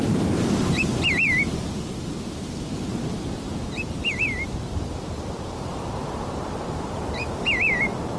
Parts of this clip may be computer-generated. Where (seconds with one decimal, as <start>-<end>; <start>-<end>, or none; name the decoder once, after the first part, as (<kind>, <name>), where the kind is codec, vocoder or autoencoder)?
0.6-8.2 (vocoder, BigVGAN v2)